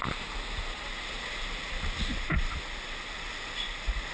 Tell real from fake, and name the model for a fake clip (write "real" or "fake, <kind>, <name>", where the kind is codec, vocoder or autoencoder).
real